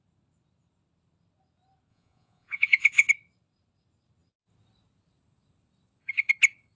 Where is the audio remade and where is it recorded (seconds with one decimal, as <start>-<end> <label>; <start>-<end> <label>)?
0.0-1.9 recorded; 1.9-3.1 remade; 3.1-6.8 recorded